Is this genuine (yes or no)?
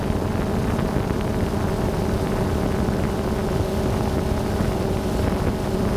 yes